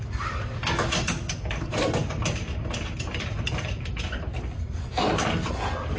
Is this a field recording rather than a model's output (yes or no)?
yes